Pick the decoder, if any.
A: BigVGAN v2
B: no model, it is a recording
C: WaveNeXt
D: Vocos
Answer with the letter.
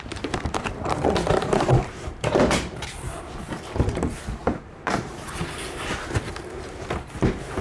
A